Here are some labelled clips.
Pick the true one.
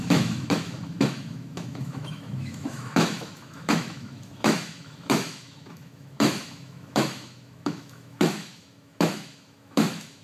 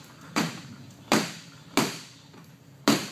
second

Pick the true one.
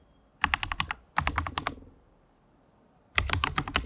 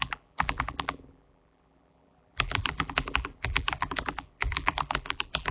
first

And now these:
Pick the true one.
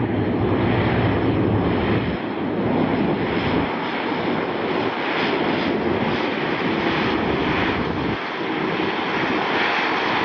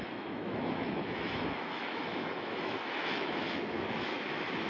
first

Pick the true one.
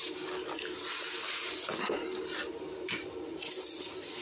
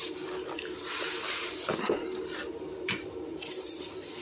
first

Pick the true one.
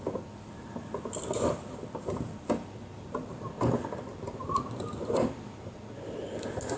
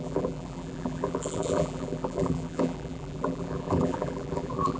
first